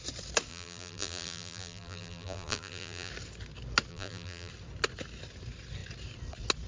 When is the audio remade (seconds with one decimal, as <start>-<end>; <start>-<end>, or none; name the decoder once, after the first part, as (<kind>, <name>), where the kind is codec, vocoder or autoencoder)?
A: 0.5-3.1 (vocoder, BigVGAN v2); 3.9-4.5